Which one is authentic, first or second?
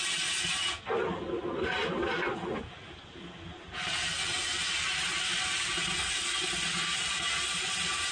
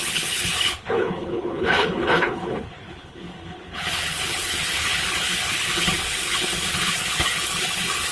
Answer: first